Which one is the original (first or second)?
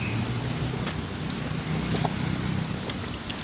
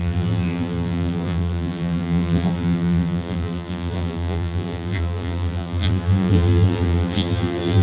first